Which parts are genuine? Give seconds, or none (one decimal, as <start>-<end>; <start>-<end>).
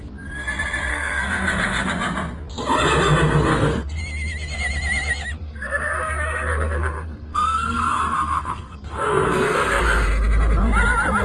0.0-0.9; 1.9-3.5; 4.0-5.4; 9.8-11.2